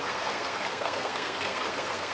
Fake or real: fake